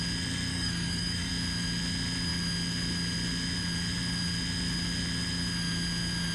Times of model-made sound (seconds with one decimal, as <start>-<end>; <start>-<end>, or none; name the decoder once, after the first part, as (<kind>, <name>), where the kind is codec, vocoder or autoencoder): 0.5-1.3 (codec, DAC)